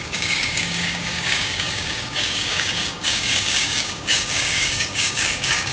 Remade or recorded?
remade